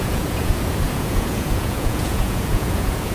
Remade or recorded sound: remade